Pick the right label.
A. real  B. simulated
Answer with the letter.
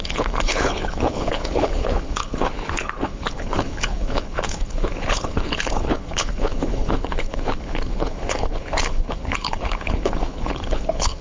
B